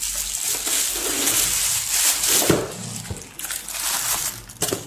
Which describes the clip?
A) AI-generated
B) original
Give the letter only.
B